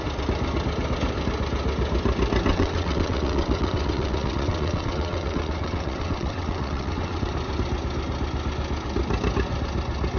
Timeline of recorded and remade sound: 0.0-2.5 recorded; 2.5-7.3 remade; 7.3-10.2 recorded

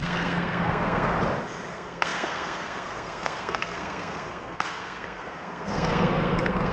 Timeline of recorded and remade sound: 0.0-1.1 remade; 1.1-1.7 recorded; 1.7-6.7 remade

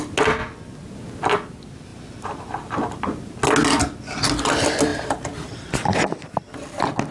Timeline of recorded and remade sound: 0.0-1.9 recorded; 1.9-3.3 remade; 3.3-4.9 recorded; 4.9-5.7 remade; 5.7-7.1 recorded

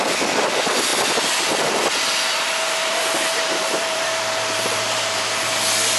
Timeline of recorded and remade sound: 0.0-2.8 recorded; 2.8-5.4 remade; 5.4-6.0 recorded

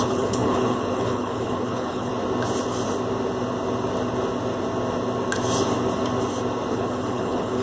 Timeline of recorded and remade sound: 0.0-2.1 remade; 2.1-6.7 recorded; 6.7-7.6 remade

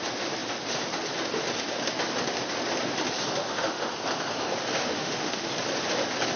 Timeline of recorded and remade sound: 0.0-3.4 recorded; 3.4-3.9 remade; 3.9-4.8 recorded; 4.8-5.5 remade; 5.5-6.4 recorded

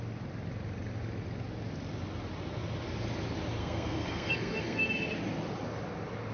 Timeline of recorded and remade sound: 0.0-3.6 recorded; 3.6-4.9 remade; 4.9-6.3 recorded